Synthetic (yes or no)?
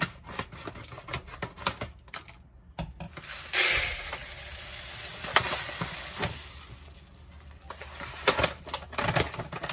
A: no